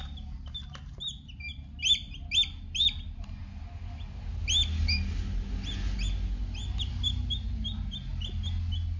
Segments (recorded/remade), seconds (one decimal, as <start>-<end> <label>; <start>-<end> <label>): 0.0-9.0 recorded